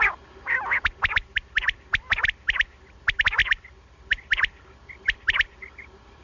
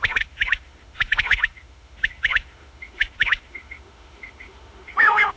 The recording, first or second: first